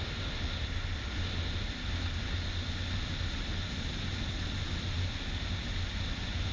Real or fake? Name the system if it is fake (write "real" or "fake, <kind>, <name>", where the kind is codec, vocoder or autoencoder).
real